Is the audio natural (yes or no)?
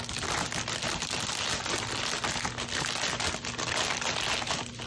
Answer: yes